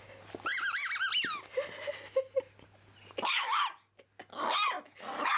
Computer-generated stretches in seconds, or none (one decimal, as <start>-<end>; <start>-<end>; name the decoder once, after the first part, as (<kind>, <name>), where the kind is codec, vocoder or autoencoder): none